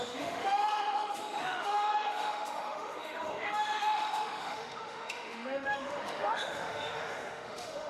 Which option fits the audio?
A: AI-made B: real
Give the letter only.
A